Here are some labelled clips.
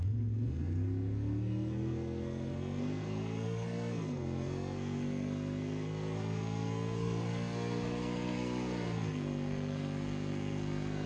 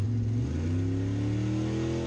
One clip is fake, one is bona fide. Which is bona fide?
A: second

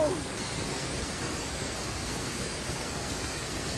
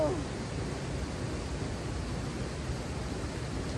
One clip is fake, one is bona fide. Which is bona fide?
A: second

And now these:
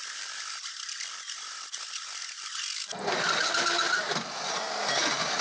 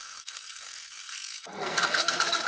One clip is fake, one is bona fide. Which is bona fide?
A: first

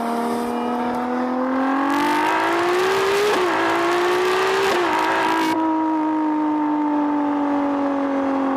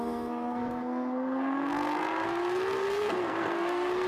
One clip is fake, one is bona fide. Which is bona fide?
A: first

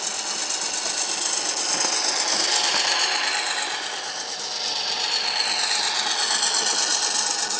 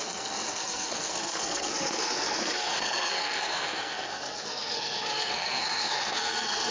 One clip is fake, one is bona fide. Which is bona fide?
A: first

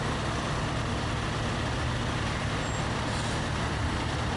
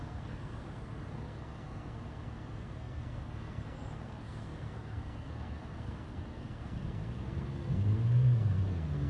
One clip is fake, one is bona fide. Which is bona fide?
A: first